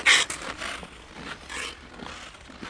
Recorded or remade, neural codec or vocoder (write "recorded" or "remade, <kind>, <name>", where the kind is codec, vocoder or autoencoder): recorded